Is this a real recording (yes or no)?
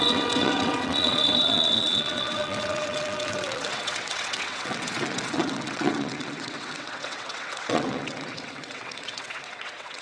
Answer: no